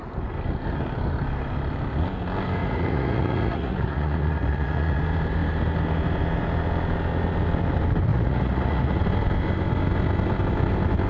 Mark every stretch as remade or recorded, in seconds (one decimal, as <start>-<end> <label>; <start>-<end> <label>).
0.0-2.6 recorded; 2.6-5.0 remade; 5.0-8.1 recorded; 8.1-9.0 remade; 9.0-11.1 recorded